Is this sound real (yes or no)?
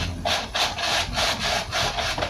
yes